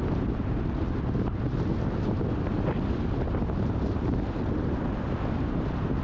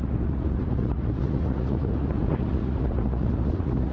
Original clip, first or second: first